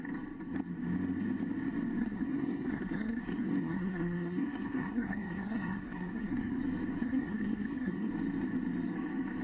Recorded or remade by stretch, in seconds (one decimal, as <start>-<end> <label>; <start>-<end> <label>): 0.0-2.0 recorded; 2.0-6.6 remade; 6.6-7.0 recorded; 7.0-8.1 remade; 8.1-9.4 recorded